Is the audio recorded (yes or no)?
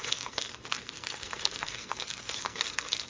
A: no